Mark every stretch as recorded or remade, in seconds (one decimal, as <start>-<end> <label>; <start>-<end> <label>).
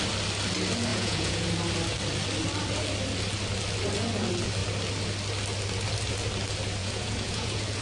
0.0-0.9 recorded; 0.9-1.5 remade; 1.5-6.8 recorded; 6.8-7.8 remade